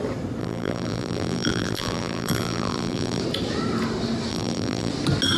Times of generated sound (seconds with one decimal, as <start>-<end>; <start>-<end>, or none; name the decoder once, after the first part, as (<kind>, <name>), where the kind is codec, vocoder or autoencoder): 0.4-3.2 (vocoder, BigVGAN v2); 4.3-4.9